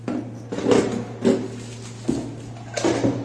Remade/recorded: recorded